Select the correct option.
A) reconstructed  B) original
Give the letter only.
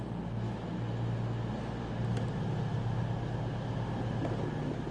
B